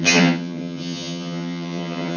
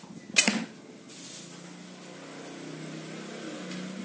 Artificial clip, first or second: first